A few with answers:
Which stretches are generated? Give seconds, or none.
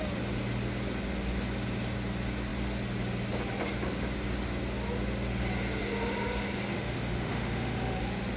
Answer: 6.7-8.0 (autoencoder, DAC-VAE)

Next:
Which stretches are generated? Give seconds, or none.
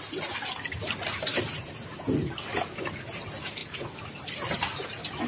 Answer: 1.3-1.9 (vocoder, BigVGAN v2); 3.6-4.3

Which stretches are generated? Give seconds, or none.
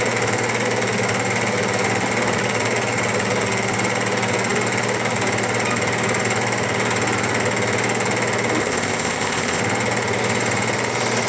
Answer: 8.6-9.6 (codec, ZipCodec)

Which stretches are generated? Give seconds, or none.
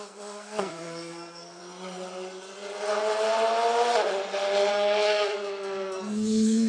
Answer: 0.0-1.6 (codec, SNAC); 4.7-6.7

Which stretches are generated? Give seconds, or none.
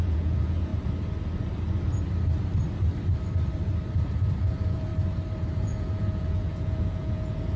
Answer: 0.0-0.7 (vocoder, Vocos); 4.4-4.9; 5.5-7.6